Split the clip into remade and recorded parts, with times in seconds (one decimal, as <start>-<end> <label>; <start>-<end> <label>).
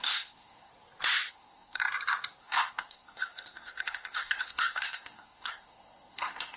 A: 0.0-0.7 remade; 0.7-1.3 recorded; 1.3-1.8 remade; 1.8-2.4 recorded; 2.4-6.6 remade